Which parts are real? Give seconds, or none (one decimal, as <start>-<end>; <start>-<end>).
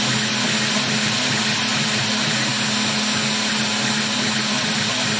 0.0-5.2